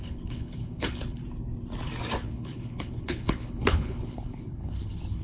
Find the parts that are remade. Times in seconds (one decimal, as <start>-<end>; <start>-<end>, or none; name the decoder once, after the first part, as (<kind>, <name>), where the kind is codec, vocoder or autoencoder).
0.0-1.2 (codec, HILCodec); 2.2-5.2